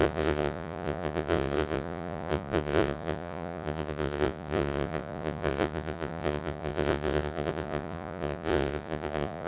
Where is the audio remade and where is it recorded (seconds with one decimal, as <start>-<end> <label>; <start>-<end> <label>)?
0.0-9.5 remade